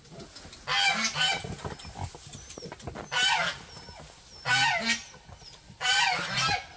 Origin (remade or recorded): recorded